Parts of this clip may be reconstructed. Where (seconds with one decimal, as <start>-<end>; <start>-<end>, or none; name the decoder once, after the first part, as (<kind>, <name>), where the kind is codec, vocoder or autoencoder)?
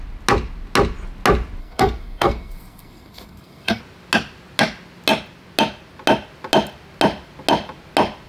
1.6-3.8 (codec, SNAC)